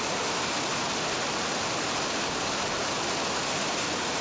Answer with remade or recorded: recorded